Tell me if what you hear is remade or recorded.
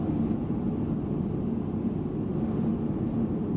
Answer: recorded